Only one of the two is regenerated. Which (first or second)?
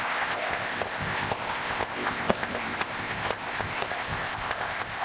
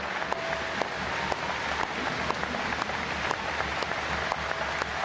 first